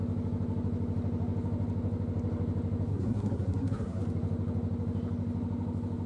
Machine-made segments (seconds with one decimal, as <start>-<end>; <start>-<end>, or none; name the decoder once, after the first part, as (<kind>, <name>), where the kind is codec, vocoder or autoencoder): 2.9-4.0 (codec, SNAC)